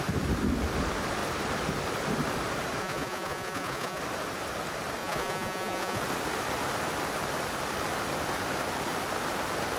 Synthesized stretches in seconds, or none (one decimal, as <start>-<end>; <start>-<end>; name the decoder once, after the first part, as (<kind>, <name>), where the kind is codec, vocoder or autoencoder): 2.8-4.0 (vocoder, Vocos); 5.0-6.0